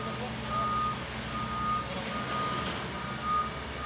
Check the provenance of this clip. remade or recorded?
recorded